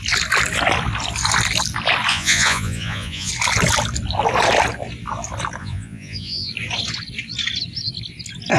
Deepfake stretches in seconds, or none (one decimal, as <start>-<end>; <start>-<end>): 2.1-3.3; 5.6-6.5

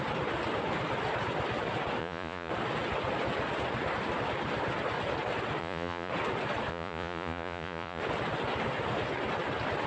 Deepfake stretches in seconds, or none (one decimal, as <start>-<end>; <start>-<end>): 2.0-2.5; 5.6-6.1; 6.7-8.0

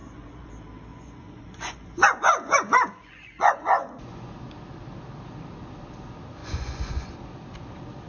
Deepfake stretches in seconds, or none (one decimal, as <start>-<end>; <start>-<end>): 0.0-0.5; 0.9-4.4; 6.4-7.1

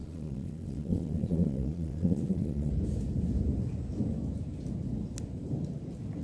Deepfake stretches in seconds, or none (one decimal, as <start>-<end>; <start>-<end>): 0.0-2.7

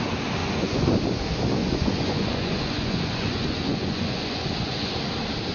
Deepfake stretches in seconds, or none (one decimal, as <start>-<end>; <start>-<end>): 0.4-0.9; 1.6-4.9